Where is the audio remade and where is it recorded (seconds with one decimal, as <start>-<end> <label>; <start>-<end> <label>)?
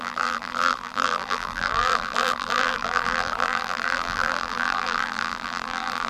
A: 0.0-6.1 remade